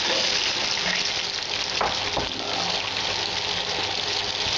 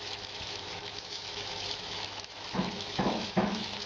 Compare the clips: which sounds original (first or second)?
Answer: first